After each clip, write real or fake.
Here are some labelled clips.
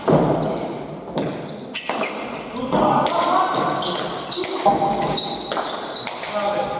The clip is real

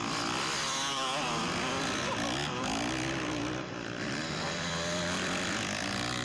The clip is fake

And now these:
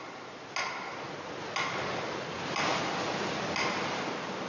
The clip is real